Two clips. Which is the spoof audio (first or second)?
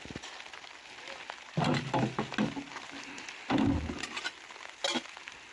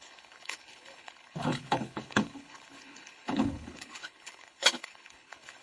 second